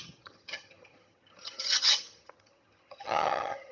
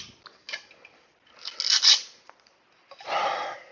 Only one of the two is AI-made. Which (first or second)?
first